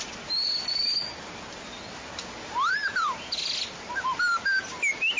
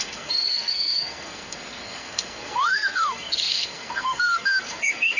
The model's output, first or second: second